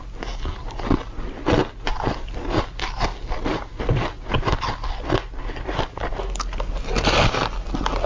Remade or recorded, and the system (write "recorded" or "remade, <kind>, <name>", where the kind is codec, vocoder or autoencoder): recorded